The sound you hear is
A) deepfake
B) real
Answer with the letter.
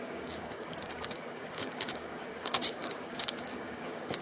A